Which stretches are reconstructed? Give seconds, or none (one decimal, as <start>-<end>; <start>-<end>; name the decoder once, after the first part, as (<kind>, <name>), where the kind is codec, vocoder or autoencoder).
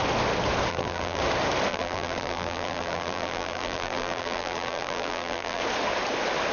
0.7-1.2 (vocoder, BigVGAN v2); 1.7-5.6